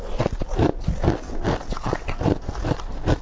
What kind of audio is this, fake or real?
real